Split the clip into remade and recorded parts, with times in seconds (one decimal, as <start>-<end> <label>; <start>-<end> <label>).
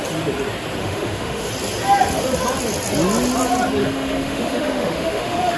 0.0-0.8 recorded; 0.8-1.5 remade; 1.5-3.8 recorded; 3.8-5.6 remade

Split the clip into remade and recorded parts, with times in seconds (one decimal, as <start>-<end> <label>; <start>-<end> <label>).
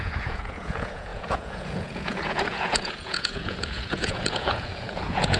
0.0-5.4 remade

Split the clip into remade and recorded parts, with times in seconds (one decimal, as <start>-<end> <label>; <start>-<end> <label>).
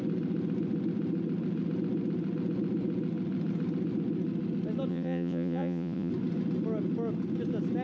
0.0-4.9 recorded; 4.9-6.1 remade; 6.1-7.8 recorded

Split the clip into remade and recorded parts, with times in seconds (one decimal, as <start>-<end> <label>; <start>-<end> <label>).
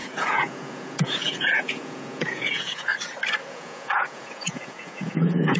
0.0-2.9 remade; 2.9-3.5 recorded; 3.5-5.6 remade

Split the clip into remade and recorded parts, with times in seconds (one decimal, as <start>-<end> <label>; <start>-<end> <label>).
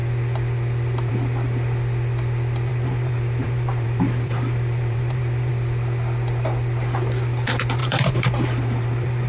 0.0-2.7 recorded; 2.7-5.5 remade; 5.5-7.8 recorded; 7.8-9.3 remade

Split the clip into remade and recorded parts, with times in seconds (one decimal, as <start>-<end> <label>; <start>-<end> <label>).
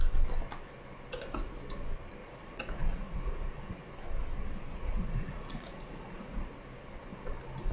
0.0-2.2 recorded; 2.2-3.9 remade; 3.9-4.7 recorded; 4.7-6.5 remade; 6.5-7.7 recorded